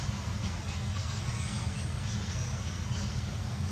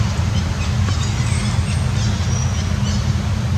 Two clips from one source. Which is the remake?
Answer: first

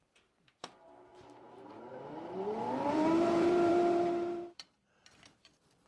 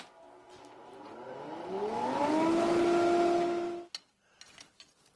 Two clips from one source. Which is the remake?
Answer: first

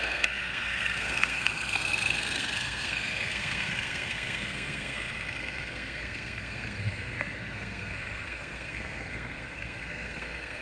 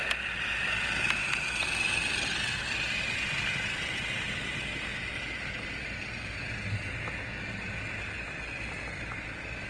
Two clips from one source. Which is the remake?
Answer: first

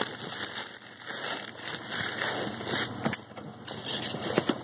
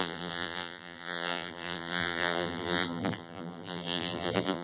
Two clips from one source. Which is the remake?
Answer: second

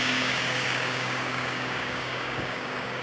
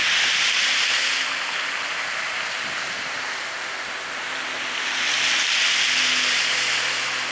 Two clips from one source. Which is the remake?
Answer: first